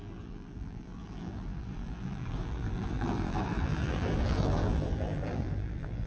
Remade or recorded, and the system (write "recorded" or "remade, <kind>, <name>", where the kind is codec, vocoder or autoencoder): remade, vocoder, BigVGAN v2